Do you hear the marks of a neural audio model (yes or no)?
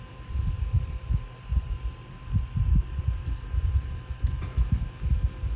yes